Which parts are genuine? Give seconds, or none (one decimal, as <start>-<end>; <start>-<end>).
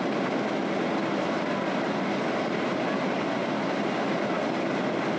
0.0-5.2